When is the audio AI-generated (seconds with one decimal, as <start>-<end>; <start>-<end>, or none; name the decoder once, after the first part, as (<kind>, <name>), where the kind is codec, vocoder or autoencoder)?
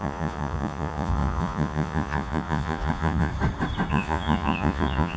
0.0-3.3 (vocoder, Vocos); 3.9-5.2